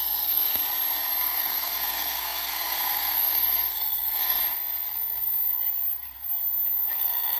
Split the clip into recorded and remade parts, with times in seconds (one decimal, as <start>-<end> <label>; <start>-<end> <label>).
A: 0.0-0.6 remade; 0.6-1.2 recorded; 1.2-4.4 remade; 4.4-7.0 recorded; 7.0-7.4 remade